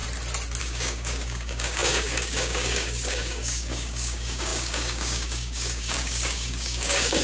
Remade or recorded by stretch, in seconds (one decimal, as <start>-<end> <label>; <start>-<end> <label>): 0.0-0.6 recorded; 0.6-7.2 remade